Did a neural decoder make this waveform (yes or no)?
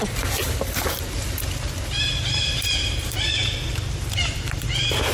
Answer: yes